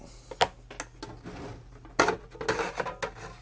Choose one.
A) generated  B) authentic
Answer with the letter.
B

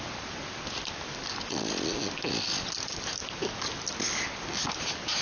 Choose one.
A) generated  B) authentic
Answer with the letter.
B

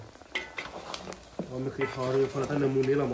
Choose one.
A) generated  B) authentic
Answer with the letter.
B